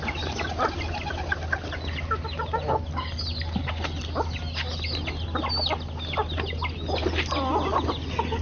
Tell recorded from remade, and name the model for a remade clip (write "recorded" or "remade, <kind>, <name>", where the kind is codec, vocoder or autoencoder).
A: recorded